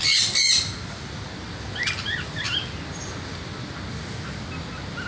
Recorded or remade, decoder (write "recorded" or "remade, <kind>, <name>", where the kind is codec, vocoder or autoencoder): recorded